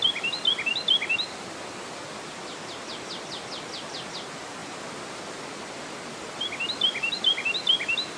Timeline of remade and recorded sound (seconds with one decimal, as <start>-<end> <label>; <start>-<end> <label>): 0.0-8.2 recorded